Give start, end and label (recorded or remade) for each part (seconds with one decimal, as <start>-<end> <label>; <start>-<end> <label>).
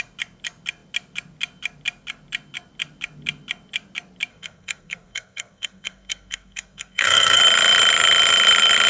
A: 0.0-4.3 recorded; 4.3-7.4 remade; 7.4-8.9 recorded